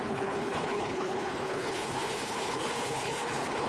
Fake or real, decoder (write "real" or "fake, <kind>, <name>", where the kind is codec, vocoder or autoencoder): fake, codec, HILCodec